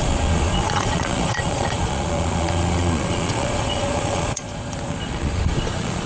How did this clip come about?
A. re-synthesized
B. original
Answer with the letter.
A